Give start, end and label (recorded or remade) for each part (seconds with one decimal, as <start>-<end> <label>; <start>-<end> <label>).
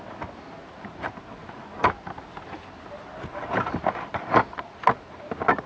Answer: 0.0-5.7 recorded